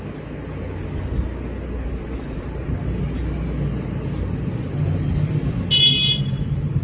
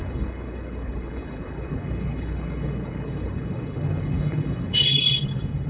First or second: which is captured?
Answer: first